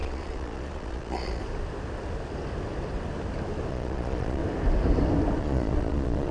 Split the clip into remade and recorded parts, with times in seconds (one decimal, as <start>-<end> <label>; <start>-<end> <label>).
0.0-1.4 remade; 1.4-3.7 recorded; 3.7-4.4 remade; 4.4-5.4 recorded; 5.4-6.3 remade